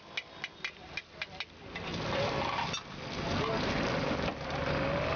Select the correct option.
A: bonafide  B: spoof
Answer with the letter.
A